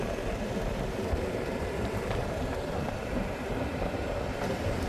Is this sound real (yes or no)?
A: no